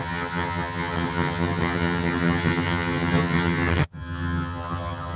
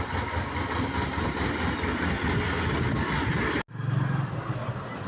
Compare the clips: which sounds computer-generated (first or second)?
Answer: first